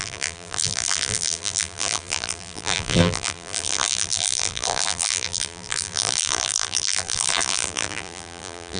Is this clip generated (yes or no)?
yes